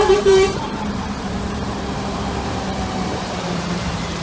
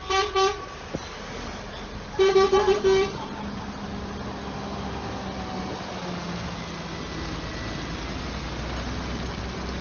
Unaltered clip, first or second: second